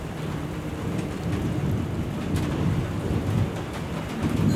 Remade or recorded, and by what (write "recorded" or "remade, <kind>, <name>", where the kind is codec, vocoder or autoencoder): recorded